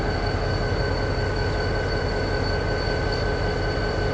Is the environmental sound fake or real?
real